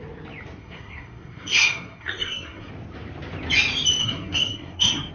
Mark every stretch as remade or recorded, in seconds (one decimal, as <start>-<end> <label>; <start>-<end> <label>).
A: 0.0-0.6 recorded; 0.6-2.7 remade; 2.7-4.0 recorded; 4.0-5.1 remade